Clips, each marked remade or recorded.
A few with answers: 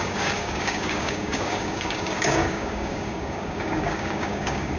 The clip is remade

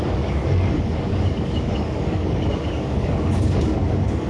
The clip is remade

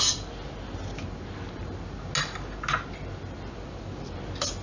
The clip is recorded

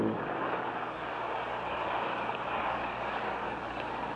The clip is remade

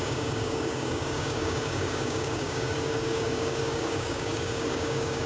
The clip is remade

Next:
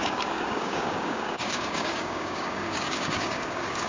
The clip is remade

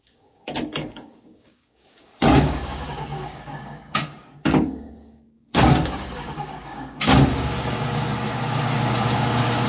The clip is remade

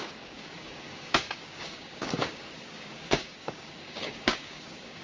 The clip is remade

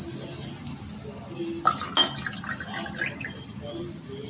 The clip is recorded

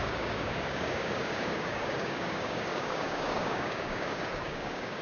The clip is remade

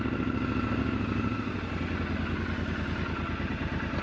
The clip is recorded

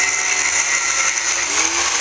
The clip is recorded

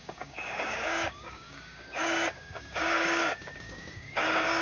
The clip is remade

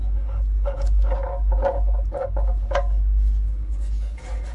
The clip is remade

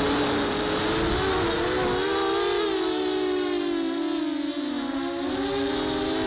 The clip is recorded